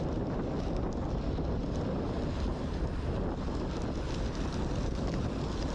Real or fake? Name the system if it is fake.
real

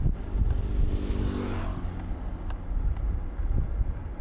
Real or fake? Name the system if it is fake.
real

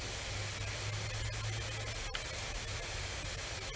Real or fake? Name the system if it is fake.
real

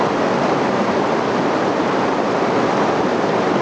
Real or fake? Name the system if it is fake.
real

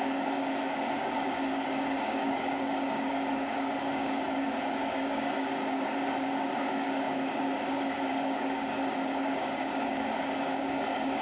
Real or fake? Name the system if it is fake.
fake, codec, DAC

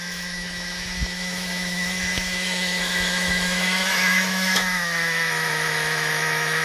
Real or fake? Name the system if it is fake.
fake, autoencoder, DAC-VAE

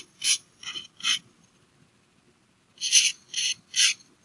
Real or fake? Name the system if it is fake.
real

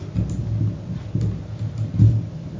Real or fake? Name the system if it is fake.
real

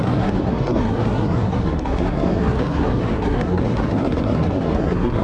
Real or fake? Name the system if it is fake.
fake, codec, SNAC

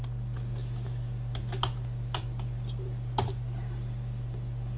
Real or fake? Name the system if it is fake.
real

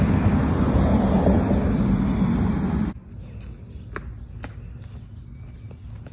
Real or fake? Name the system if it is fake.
real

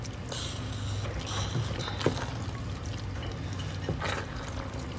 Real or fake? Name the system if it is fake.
real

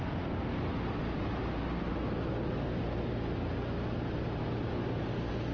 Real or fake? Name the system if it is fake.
real